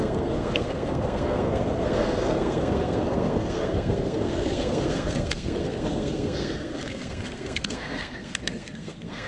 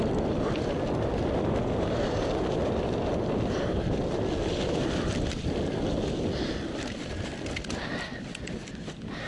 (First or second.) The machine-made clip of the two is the first